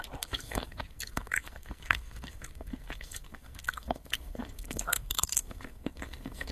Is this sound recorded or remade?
remade